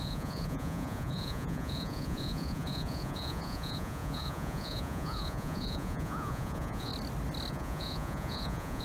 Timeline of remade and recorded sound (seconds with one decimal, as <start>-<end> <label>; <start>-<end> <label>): 0.0-6.9 remade; 6.9-7.5 recorded; 7.5-8.8 remade